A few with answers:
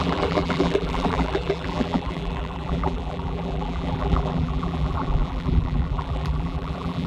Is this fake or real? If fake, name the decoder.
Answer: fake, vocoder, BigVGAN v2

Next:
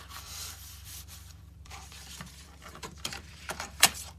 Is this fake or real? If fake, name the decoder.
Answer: fake, vocoder, BigVGAN v2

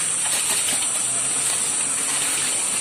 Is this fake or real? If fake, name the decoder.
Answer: real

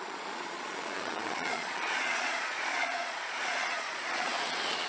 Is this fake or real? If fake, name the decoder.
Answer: fake, vocoder, Vocos